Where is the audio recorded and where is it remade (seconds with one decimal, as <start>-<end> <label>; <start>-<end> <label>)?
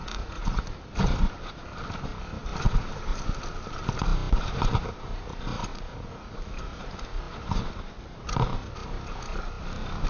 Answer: 0.0-0.7 remade; 0.7-5.7 recorded; 5.7-6.8 remade; 6.8-10.1 recorded